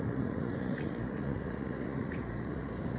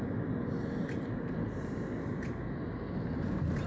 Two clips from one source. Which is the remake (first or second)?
first